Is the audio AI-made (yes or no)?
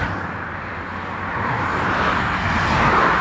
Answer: no